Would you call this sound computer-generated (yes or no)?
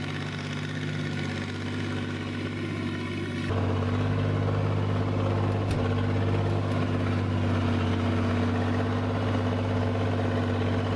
no